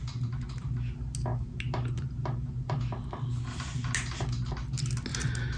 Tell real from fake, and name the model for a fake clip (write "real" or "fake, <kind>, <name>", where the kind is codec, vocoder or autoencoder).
real